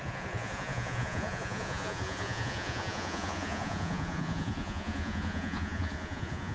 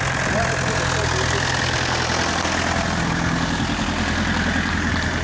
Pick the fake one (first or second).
first